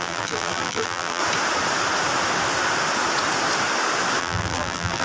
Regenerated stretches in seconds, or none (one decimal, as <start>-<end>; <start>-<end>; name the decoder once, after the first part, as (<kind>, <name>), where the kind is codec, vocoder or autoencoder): 0.0-1.2 (vocoder, BigVGAN v2); 4.2-5.0